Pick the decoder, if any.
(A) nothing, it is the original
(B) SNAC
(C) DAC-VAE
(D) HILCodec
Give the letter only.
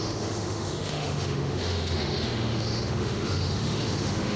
C